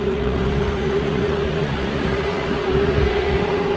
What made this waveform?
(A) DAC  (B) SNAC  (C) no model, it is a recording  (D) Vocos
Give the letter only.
D